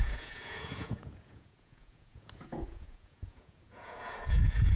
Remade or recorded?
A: remade